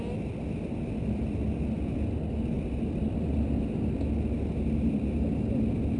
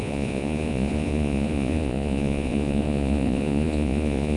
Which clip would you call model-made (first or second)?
second